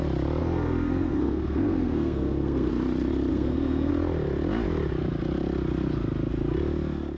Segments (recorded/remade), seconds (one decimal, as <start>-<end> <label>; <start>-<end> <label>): 0.0-0.4 recorded; 0.4-2.7 remade; 2.7-3.3 recorded; 3.3-3.9 remade; 3.9-7.2 recorded